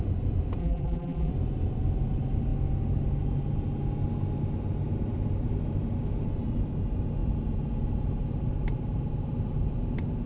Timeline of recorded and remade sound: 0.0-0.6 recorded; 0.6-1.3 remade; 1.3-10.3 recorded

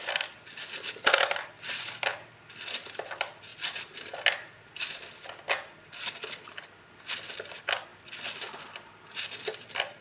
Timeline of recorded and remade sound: 0.0-10.0 recorded

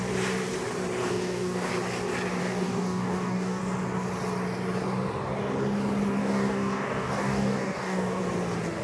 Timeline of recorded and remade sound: 0.0-1.0 recorded; 1.0-1.7 remade; 1.7-2.4 recorded; 2.4-3.6 remade; 3.6-6.2 recorded; 6.2-8.2 remade; 8.2-8.8 recorded

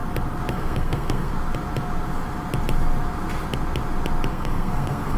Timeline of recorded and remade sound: 0.0-0.5 recorded; 0.5-1.3 remade; 1.3-4.3 recorded; 4.3-5.2 remade

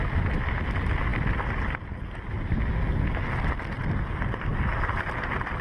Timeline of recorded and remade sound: 0.0-5.6 recorded

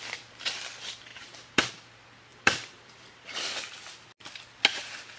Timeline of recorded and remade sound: 0.0-1.1 recorded; 1.1-1.7 remade; 1.7-2.3 recorded; 2.3-3.4 remade; 3.4-5.2 recorded

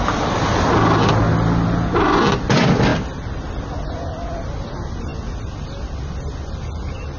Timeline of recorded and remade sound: 0.0-7.2 recorded

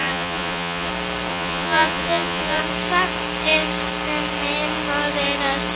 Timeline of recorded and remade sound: 0.0-0.9 remade; 0.9-1.3 recorded; 1.3-2.6 remade; 2.6-5.8 recorded